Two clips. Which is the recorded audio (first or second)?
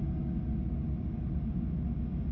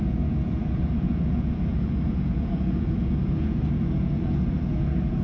first